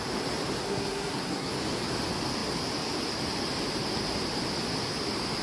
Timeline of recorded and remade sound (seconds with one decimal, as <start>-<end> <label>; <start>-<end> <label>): 0.0-0.6 recorded; 0.6-1.5 remade; 1.5-5.4 recorded